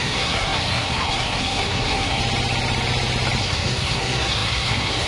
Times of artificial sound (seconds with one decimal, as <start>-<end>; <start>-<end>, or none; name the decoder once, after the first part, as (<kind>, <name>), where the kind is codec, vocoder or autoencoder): 0.0-2.2 (codec, SNAC); 3.4-5.1